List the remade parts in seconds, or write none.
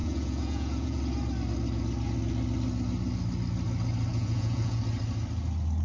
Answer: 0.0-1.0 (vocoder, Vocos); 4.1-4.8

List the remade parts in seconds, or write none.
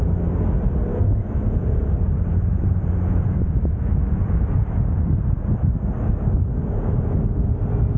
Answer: 0.9-5.0 (vocoder, Vocos)